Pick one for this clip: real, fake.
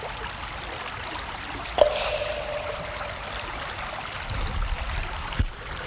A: real